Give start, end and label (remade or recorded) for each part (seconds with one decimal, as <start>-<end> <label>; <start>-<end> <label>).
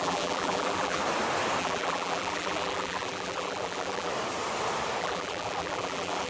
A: 0.0-1.0 remade; 1.0-1.6 recorded; 1.6-4.1 remade; 4.1-5.0 recorded; 5.0-6.3 remade